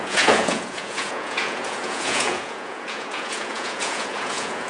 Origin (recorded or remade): remade